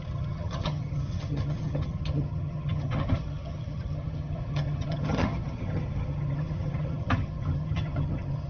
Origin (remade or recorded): remade